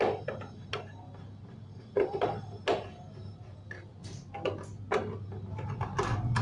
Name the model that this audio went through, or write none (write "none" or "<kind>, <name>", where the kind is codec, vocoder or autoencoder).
none